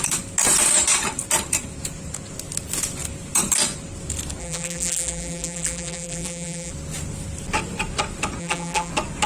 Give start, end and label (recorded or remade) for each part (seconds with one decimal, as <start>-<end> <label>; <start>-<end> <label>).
0.0-4.4 recorded; 4.4-6.7 remade; 6.7-8.4 recorded; 8.4-8.9 remade; 8.9-9.3 recorded